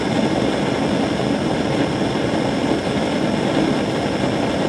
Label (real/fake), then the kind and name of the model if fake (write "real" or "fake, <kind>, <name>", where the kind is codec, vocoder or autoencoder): real